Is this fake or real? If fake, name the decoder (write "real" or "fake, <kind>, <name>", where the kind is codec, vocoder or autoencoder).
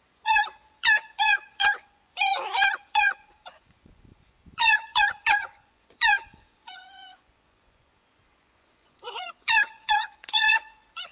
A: fake, vocoder, Vocos